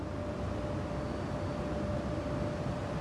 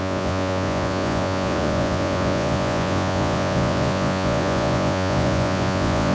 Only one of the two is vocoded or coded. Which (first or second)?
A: second